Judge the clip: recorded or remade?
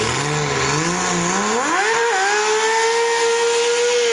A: recorded